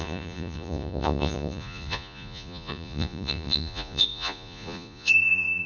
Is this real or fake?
fake